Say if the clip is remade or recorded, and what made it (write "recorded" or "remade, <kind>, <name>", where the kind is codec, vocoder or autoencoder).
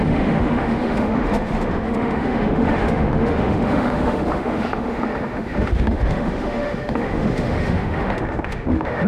remade, autoencoder, DAC-VAE